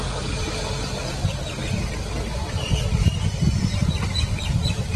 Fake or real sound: real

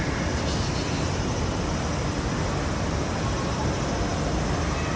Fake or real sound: real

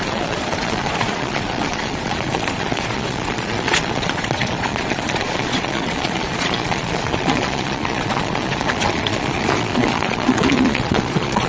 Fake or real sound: fake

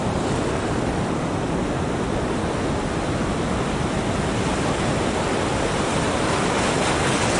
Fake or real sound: real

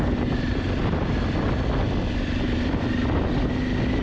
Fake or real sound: real